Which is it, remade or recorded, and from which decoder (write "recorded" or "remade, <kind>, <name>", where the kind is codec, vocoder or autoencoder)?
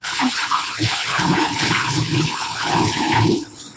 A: remade, codec, HILCodec